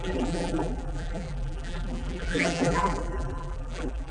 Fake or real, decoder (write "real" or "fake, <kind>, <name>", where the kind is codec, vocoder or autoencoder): fake, vocoder, BigVGAN v2